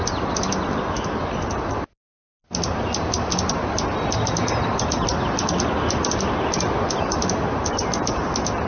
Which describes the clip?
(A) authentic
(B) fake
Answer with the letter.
A